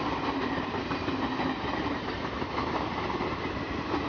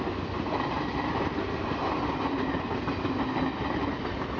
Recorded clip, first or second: second